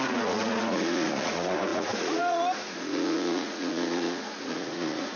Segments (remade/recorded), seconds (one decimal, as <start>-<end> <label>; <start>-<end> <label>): 0.0-5.2 remade